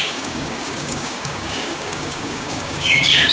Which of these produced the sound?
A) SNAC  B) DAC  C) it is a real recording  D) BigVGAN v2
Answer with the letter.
B